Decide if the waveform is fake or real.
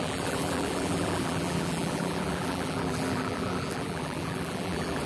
fake